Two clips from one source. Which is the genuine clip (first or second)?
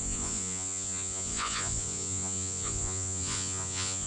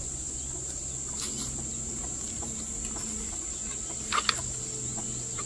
second